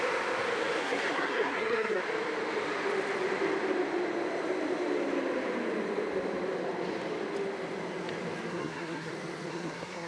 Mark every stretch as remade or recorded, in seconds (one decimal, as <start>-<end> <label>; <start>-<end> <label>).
0.0-0.8 recorded; 0.8-2.0 remade; 2.0-8.5 recorded; 8.5-9.1 remade; 9.1-9.5 recorded; 9.5-10.1 remade